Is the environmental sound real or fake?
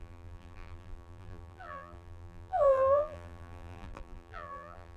fake